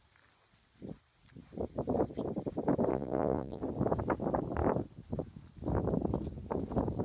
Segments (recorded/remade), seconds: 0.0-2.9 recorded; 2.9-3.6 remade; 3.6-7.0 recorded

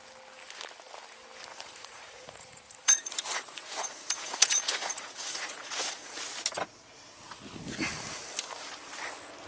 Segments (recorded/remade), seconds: 0.0-1.5 recorded; 1.5-6.2 remade; 6.2-9.5 recorded

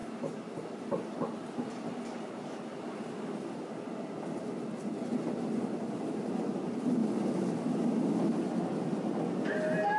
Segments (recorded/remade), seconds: 0.0-10.0 recorded

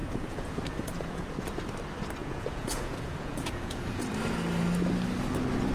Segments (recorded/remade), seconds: 0.0-1.3 remade; 1.3-2.2 recorded; 2.2-4.0 remade; 4.0-5.7 recorded